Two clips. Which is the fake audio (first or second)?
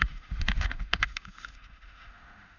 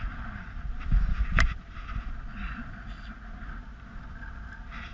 first